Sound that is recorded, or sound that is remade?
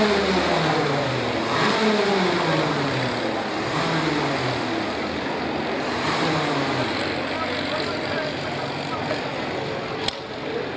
recorded